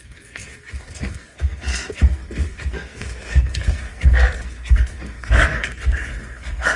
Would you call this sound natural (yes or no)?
no